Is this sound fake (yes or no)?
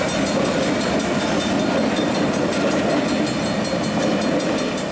no